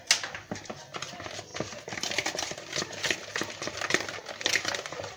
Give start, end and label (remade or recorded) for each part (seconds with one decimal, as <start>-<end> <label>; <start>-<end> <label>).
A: 0.0-5.2 recorded